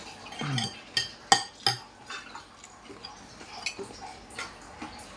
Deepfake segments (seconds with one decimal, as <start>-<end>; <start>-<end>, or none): none